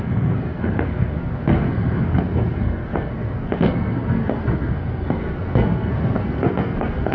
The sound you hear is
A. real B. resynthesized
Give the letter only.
B